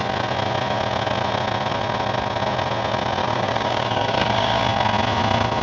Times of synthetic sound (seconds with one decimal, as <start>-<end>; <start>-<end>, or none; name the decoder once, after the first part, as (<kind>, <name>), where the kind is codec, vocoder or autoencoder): 3.2-4.6 (codec, DAC)